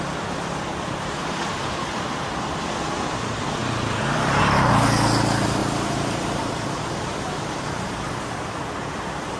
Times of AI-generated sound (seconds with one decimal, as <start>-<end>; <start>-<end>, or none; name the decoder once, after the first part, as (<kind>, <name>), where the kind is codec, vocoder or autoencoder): 0.7-1.4 (vocoder, BigVGAN v2); 5.6-8.1